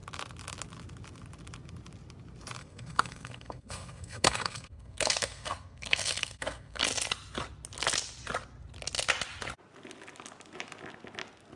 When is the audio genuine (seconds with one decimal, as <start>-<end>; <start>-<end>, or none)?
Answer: 0.0-2.6; 6.8-11.6